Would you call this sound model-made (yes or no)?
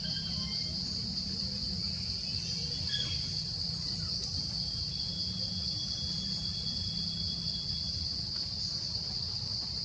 no